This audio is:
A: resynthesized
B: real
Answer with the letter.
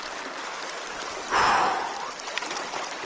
B